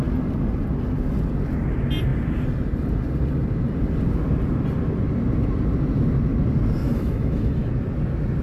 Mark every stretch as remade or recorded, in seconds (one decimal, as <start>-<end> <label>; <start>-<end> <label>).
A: 0.0-6.8 recorded; 6.8-7.7 remade; 7.7-8.4 recorded